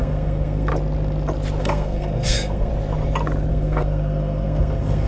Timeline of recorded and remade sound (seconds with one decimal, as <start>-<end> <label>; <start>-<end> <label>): 0.0-0.7 remade; 0.7-1.6 recorded; 1.6-2.7 remade; 2.7-3.5 recorded; 3.5-5.1 remade